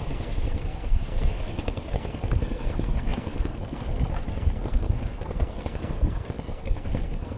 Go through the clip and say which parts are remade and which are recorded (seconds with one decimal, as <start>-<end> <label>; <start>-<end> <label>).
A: 0.0-7.4 remade